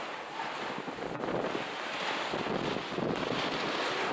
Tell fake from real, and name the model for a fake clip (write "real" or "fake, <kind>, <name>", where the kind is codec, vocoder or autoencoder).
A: real